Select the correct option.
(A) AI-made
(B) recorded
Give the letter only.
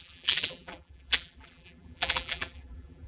A